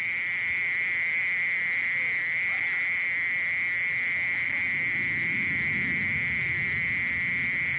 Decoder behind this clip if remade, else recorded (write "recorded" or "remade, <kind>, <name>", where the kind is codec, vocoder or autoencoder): recorded